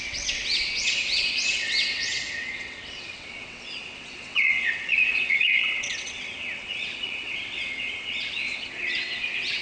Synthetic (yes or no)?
yes